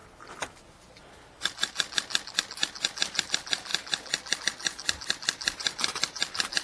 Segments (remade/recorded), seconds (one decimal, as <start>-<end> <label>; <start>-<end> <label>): 0.0-3.3 recorded; 3.3-3.7 remade; 3.7-4.4 recorded; 4.4-6.6 remade